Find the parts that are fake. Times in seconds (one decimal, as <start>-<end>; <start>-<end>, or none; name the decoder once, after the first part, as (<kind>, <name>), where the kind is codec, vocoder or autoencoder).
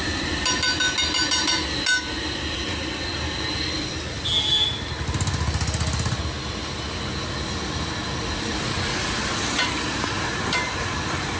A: none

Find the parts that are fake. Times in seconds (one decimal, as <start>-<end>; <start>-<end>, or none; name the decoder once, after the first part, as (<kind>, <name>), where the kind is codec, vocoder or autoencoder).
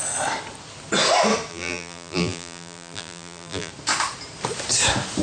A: 1.5-3.7 (vocoder, BigVGAN v2)